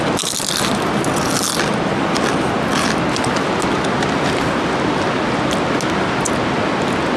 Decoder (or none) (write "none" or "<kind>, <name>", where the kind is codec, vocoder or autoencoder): none